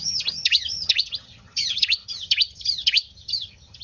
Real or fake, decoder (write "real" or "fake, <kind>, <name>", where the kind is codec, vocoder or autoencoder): fake, vocoder, HiFi-GAN